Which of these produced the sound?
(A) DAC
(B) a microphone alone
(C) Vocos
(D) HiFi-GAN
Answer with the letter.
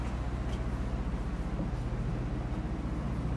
B